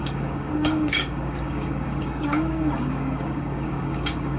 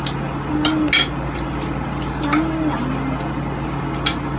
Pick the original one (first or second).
second